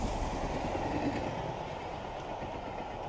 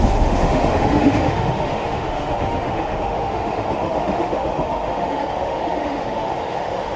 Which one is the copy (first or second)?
second